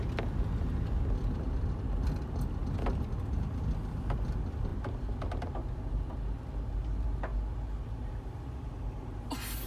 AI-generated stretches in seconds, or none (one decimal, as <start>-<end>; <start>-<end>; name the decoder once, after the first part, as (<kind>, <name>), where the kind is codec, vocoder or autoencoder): none